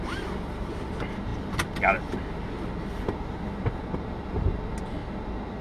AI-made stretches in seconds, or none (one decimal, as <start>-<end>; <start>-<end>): none